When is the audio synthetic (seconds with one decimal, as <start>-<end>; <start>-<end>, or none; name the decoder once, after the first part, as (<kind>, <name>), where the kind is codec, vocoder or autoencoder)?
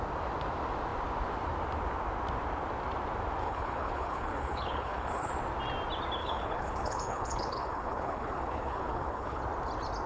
3.4-5.3 (codec, HILCodec); 6.2-9.4